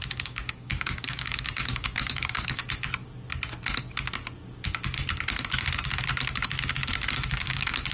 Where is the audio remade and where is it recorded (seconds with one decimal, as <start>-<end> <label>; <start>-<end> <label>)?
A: 0.0-2.6 remade; 2.6-7.3 recorded; 7.3-7.9 remade